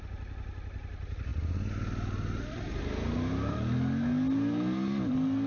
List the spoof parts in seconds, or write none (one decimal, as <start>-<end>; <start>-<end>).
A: none